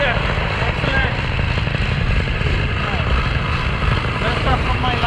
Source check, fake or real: fake